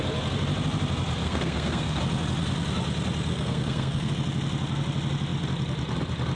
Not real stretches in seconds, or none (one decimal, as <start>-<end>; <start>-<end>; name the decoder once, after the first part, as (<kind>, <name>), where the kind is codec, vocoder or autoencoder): 1.2-2.0 (codec, SNAC); 3.3-4.1